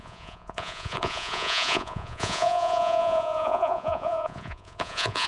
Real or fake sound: fake